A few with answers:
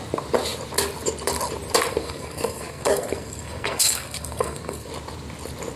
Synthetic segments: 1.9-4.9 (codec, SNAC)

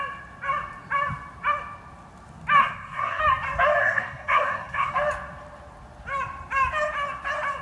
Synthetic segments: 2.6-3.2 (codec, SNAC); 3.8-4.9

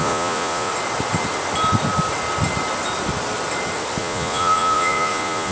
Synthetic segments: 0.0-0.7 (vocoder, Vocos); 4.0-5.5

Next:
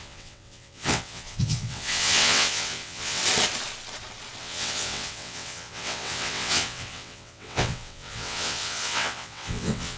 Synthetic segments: 0.0-3.2 (vocoder, WaveNeXt); 4.4-10.0